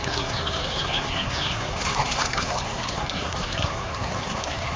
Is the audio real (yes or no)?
no